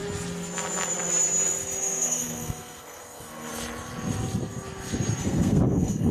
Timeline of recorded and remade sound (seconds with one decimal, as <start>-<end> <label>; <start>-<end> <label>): 0.0-1.8 recorded; 1.8-3.5 remade; 3.5-5.2 recorded; 5.2-6.1 remade